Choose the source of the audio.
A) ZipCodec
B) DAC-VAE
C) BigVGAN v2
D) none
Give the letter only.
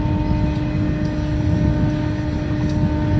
D